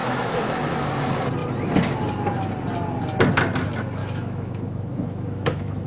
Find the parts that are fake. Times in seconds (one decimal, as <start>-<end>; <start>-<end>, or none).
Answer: 0.0-0.9; 4.0-5.9